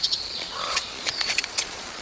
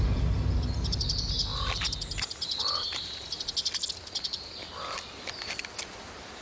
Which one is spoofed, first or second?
first